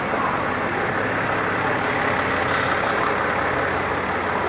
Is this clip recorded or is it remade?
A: recorded